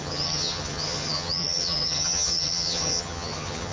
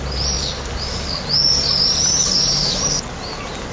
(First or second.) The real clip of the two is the second